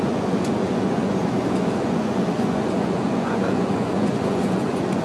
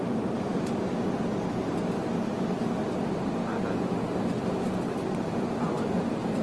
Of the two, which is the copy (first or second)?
first